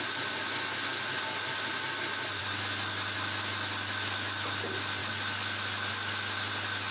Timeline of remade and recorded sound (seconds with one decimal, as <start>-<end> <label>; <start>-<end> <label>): 0.0-6.9 recorded